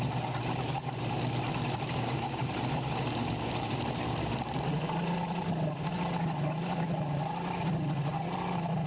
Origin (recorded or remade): recorded